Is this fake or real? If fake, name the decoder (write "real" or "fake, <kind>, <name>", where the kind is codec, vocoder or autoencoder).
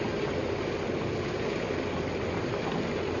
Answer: real